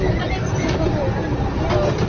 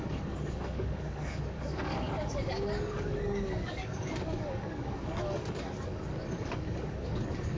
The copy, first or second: second